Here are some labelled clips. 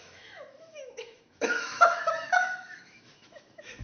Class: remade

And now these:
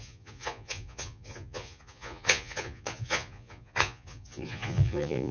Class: remade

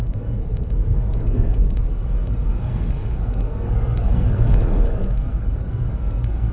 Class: remade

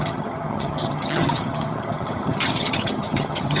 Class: remade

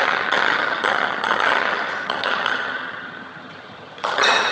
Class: remade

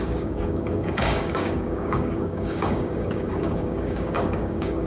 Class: remade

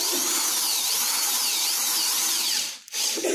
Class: remade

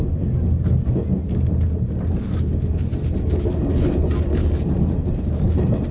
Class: recorded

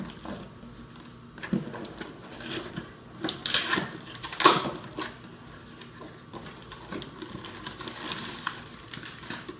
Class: recorded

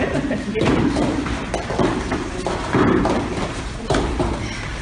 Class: remade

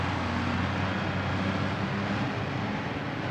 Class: recorded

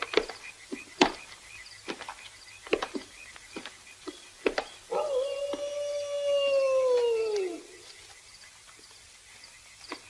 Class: recorded